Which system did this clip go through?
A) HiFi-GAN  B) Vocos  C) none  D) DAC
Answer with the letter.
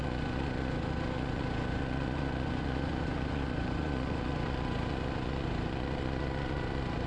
B